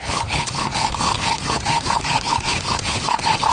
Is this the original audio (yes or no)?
no